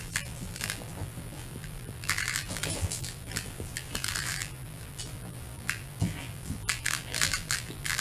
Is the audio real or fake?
fake